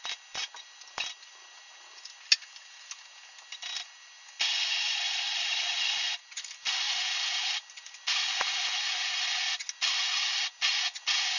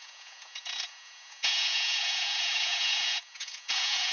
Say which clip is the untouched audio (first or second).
first